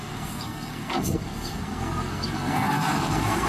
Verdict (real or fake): fake